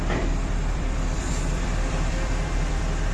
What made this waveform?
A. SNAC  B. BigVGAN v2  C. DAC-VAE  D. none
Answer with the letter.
B